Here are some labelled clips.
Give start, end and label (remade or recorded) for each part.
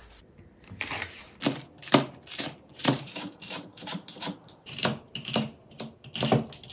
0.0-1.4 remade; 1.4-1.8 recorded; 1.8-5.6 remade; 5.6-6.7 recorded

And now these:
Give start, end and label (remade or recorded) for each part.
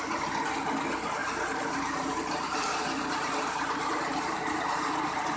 0.0-1.2 recorded; 1.2-4.4 remade; 4.4-5.4 recorded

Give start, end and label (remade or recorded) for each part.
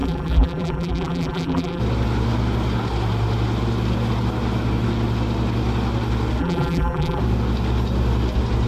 0.0-1.8 remade; 1.8-6.4 recorded; 6.4-7.2 remade; 7.2-8.7 recorded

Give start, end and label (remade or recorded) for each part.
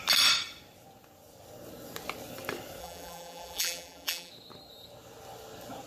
0.0-2.8 recorded; 2.8-4.3 remade; 4.3-5.9 recorded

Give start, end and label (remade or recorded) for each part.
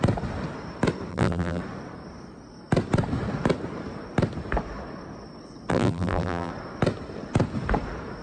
0.0-1.1 recorded; 1.1-1.6 remade; 1.6-5.7 recorded; 5.7-6.5 remade; 6.5-8.2 recorded